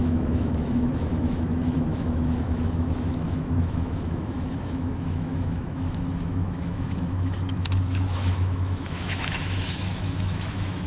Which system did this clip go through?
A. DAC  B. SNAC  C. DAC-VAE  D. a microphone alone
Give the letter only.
C